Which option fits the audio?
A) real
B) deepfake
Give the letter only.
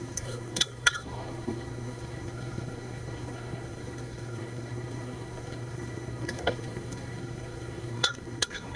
B